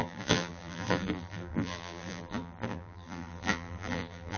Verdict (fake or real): fake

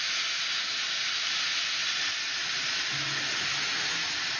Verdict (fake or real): real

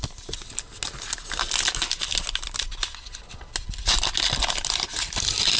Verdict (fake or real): real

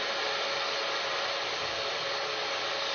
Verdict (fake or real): real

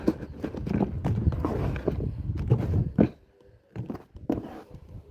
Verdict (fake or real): real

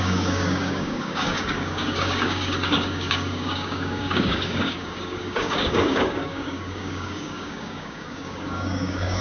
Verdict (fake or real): fake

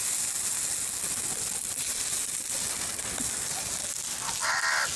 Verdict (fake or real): real